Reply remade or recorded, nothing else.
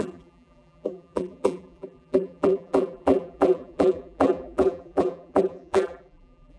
remade